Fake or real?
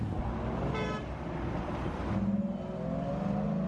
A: real